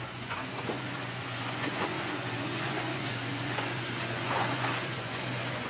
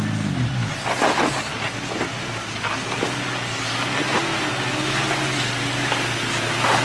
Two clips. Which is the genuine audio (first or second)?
second